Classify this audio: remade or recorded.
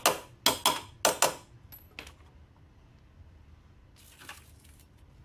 recorded